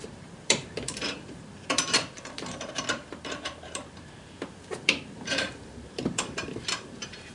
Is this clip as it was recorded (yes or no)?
no